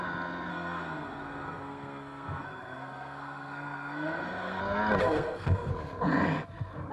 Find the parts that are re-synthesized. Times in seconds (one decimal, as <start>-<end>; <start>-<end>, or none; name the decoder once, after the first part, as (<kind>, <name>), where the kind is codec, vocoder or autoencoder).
0.5-4.6 (codec, SNAC); 5.0-5.7